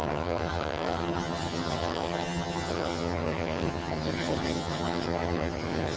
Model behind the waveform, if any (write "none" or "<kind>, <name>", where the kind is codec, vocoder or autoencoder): vocoder, HiFi-GAN